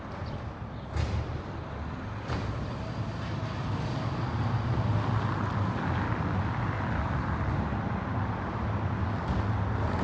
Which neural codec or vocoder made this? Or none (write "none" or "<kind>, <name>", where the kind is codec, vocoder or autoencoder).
none